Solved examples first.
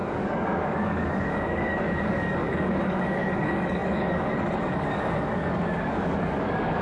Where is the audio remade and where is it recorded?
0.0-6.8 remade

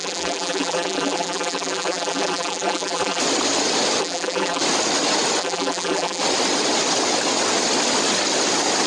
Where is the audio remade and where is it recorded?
0.0-3.2 remade; 3.2-4.0 recorded; 4.0-4.6 remade; 4.6-5.4 recorded; 5.4-6.2 remade; 6.2-8.9 recorded